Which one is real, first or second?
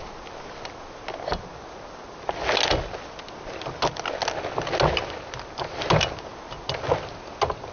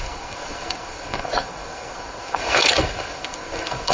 first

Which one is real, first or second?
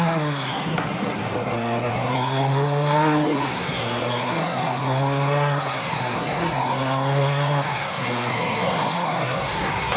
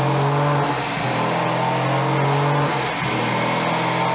second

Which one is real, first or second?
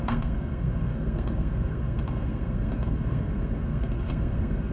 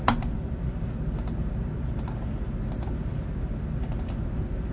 second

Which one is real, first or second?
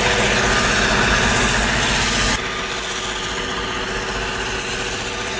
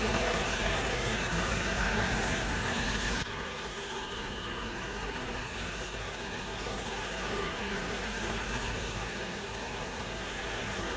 first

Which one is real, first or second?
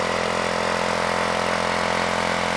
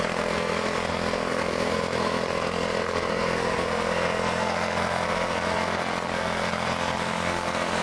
first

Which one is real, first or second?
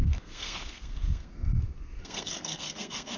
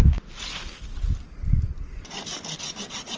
second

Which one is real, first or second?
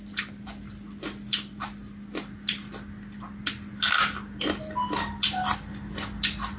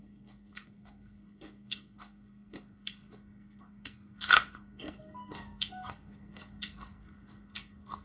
first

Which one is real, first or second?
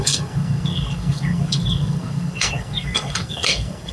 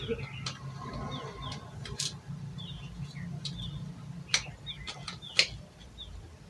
second